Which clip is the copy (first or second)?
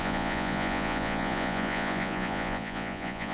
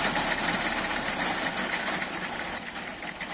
first